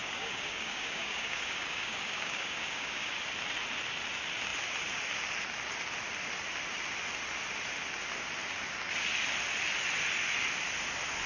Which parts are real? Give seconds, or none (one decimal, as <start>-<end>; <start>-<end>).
3.1-11.3